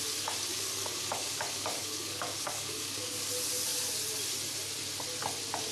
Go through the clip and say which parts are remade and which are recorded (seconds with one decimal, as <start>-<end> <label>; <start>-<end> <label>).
0.0-0.5 recorded; 0.5-3.3 remade; 3.3-5.7 recorded

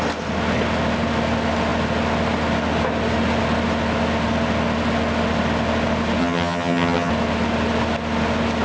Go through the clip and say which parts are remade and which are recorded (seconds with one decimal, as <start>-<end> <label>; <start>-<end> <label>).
0.0-6.2 recorded; 6.2-7.1 remade; 7.1-8.6 recorded

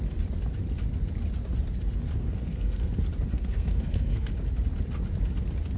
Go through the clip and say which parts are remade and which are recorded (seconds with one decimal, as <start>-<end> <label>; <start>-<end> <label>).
0.0-2.2 recorded; 2.2-2.9 remade; 2.9-3.3 recorded; 3.3-4.3 remade; 4.3-5.8 recorded

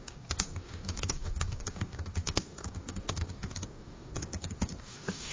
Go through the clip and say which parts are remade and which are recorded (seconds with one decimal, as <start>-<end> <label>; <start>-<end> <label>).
0.0-5.3 remade